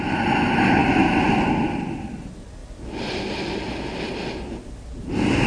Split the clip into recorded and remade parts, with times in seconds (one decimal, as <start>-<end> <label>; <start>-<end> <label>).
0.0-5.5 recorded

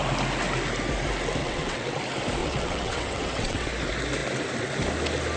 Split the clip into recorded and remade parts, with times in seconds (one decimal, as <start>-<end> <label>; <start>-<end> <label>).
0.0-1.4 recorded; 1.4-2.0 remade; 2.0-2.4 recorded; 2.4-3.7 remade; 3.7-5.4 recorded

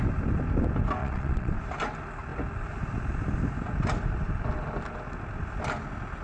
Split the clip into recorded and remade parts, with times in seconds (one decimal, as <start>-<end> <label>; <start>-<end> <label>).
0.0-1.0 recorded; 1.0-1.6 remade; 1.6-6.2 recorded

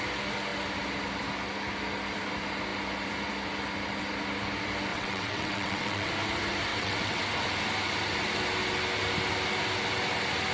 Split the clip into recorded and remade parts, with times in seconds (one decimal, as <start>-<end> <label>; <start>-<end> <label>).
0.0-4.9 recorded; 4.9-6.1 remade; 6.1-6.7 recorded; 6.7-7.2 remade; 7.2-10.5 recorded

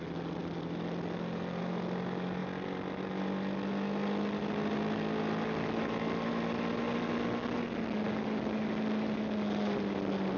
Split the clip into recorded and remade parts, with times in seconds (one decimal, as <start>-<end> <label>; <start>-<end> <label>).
0.0-10.4 recorded

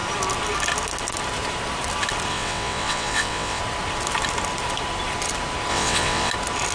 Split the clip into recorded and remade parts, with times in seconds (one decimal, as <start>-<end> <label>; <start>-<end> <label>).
0.0-2.3 recorded; 2.3-3.6 remade; 3.6-5.7 recorded; 5.7-6.3 remade; 6.3-6.7 recorded

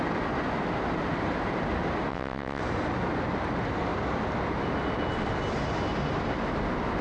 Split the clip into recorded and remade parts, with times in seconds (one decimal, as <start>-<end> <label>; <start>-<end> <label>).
0.0-2.1 recorded; 2.1-2.6 remade; 2.6-7.0 recorded

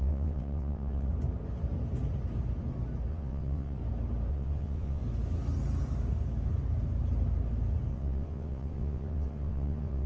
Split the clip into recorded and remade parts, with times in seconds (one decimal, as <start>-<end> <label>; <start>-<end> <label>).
0.0-1.1 remade; 1.1-3.1 recorded; 3.1-3.8 remade; 3.8-4.3 recorded; 4.3-5.0 remade; 5.0-7.9 recorded; 7.9-10.1 remade